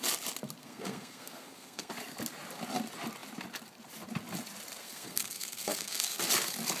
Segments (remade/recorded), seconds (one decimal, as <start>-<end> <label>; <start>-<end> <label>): 0.0-0.6 recorded; 0.6-1.9 remade; 1.9-4.8 recorded; 4.8-6.2 remade; 6.2-6.8 recorded